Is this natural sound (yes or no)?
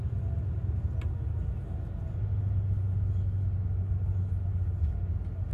yes